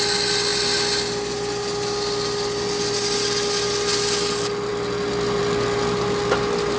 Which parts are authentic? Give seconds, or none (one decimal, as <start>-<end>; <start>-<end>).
0.0-6.8